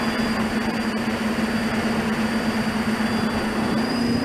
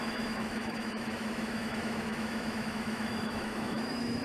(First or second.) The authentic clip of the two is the first